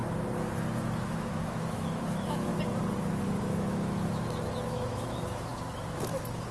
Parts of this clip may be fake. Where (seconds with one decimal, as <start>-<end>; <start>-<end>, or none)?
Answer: 0.8-2.5; 3.4-6.5